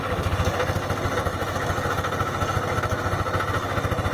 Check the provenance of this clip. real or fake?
real